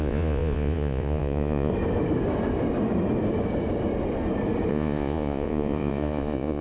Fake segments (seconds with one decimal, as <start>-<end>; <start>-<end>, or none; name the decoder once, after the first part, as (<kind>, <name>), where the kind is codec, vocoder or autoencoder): 0.0-1.7 (vocoder, Vocos); 4.7-6.6